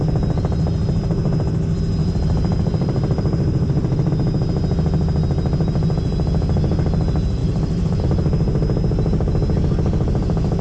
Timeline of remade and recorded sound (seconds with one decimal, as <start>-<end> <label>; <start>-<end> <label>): 0.0-2.0 recorded; 2.0-4.1 remade; 4.1-7.4 recorded; 7.4-8.0 remade; 8.0-10.6 recorded